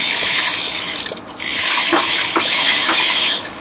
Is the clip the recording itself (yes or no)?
no